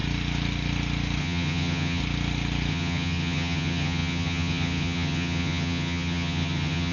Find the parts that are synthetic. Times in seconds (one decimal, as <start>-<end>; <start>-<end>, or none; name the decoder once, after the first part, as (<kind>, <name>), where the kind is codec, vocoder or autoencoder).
1.2-2.0 (vocoder, HiFi-GAN); 2.7-6.9